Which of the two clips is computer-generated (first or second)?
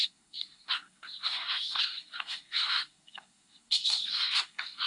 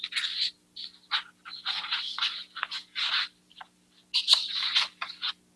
first